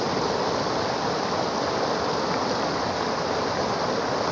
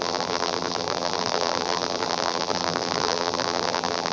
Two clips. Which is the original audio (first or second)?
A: first